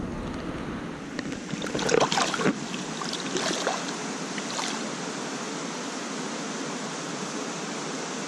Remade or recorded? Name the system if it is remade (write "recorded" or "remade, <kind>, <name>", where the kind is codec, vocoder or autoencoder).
recorded